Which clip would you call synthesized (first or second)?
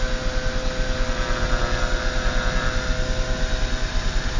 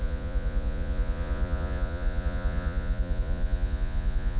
second